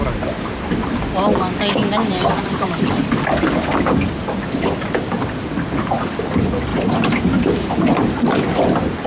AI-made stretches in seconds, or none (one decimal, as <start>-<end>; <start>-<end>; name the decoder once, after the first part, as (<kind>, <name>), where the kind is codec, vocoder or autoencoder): 2.2-3.0 (vocoder, BigVGAN v2); 6.7-8.2